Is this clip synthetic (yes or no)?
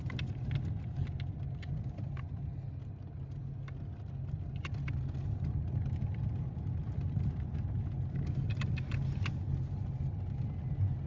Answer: no